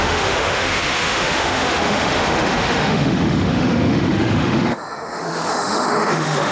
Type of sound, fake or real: fake